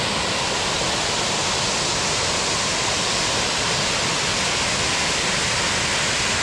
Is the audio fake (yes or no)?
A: no